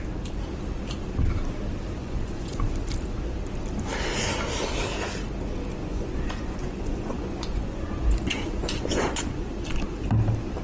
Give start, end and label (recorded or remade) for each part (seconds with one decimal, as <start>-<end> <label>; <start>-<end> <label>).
0.0-2.0 recorded; 2.0-2.6 remade; 2.6-5.8 recorded; 5.8-9.5 remade; 9.5-10.6 recorded